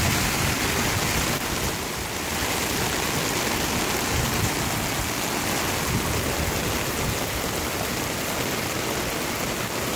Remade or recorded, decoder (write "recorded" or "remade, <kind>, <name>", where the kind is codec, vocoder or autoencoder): recorded